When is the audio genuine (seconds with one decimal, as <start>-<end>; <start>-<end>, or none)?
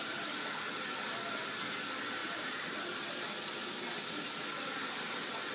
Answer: 0.0-2.2; 2.9-5.5